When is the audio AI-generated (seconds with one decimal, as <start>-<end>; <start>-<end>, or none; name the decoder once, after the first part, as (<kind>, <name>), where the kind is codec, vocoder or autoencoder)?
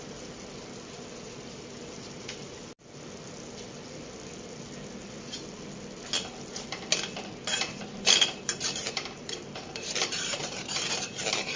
7.5-11.2 (vocoder, BigVGAN v2)